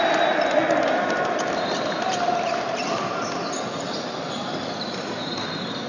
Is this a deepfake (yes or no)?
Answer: no